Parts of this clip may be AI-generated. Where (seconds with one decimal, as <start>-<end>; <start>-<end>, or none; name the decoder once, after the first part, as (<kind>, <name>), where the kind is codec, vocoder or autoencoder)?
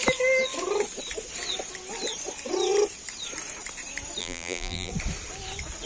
4.2-4.9 (vocoder, BigVGAN v2)